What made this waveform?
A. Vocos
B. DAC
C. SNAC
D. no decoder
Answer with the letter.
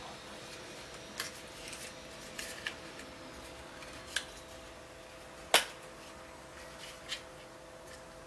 D